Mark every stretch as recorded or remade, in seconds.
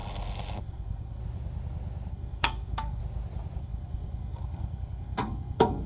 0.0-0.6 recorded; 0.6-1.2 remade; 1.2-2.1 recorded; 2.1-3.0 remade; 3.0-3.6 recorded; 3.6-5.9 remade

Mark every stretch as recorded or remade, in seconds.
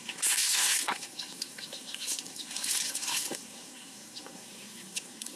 0.0-5.4 remade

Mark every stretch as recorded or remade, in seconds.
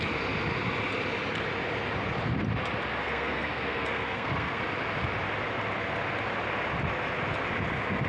0.0-3.0 recorded; 3.0-4.6 remade; 4.6-8.1 recorded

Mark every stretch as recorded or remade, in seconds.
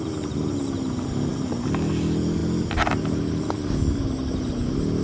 0.0-5.0 recorded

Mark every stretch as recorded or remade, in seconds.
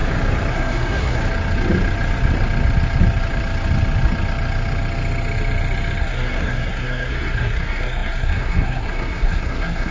0.0-0.5 recorded; 0.5-1.2 remade; 1.2-6.0 recorded; 6.0-9.9 remade